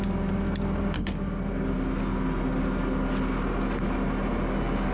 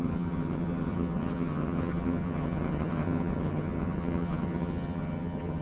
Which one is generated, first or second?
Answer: second